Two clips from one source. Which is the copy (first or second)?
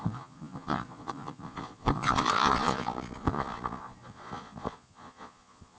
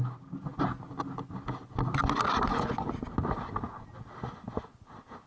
first